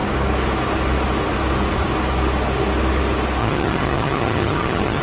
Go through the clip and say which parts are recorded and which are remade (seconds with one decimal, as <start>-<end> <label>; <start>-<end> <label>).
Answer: 0.0-3.4 recorded; 3.4-5.0 remade